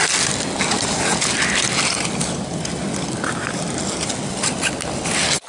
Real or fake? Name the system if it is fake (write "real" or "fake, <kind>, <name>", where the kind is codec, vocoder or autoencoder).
real